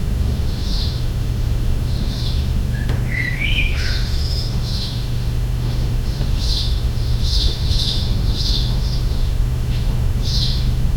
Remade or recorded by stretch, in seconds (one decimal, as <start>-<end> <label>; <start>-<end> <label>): 0.0-11.0 remade